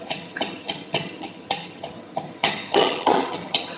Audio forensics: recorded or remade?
remade